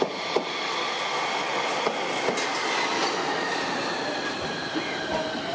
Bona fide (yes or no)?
yes